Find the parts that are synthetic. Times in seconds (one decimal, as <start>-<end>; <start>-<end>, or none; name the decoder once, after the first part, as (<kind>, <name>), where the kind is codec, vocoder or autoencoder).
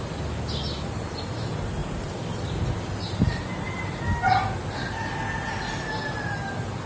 none